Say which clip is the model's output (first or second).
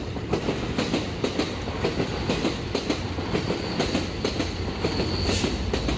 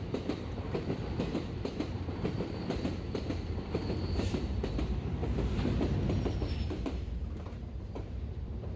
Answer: second